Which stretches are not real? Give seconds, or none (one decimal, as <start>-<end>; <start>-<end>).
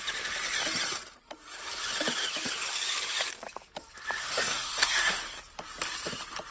4.2-5.2